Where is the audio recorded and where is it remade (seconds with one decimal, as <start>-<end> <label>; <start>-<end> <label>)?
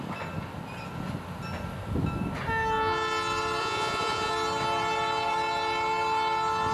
0.0-3.6 recorded; 3.6-4.3 remade; 4.3-6.7 recorded